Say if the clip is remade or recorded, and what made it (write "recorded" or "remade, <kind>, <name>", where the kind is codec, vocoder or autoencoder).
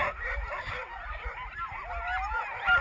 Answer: recorded